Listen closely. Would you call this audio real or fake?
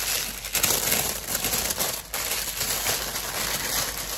real